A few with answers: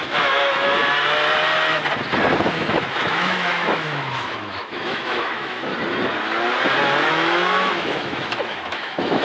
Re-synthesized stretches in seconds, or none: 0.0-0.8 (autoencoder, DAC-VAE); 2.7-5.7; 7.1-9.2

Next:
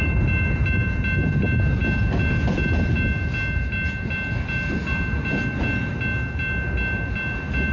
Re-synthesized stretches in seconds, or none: none

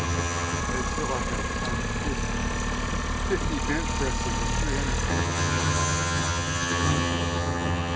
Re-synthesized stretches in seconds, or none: 0.0-0.6 (vocoder, HiFi-GAN); 5.1-8.0

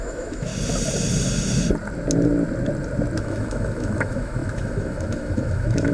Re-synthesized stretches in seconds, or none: 0.0-0.5 (autoencoder, DAC-VAE); 3.2-5.9

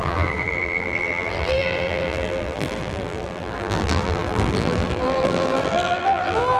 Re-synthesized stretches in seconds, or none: 0.0-6.6 (vocoder, BigVGAN v2)

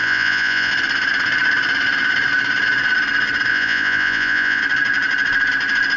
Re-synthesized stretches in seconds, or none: 0.0-0.7 (vocoder, Vocos); 3.5-4.6